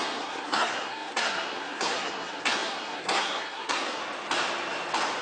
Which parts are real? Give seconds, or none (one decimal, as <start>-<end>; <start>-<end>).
4.0-5.2